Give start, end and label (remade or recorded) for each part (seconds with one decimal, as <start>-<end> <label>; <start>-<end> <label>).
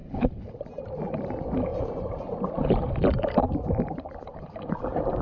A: 0.0-0.6 remade; 0.6-5.2 recorded